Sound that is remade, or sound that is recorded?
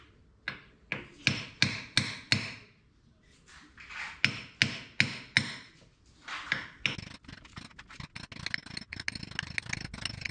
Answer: recorded